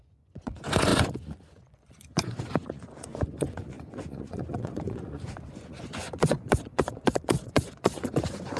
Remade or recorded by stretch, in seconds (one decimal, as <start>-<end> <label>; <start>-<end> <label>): 0.0-8.6 remade